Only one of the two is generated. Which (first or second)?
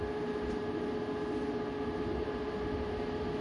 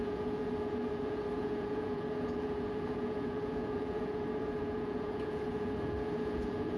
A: second